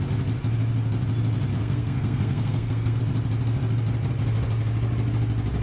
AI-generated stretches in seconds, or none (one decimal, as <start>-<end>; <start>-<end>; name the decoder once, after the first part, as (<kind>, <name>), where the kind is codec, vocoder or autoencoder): 1.5-3.0 (codec, SNAC)